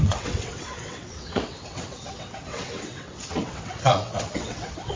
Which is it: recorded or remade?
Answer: remade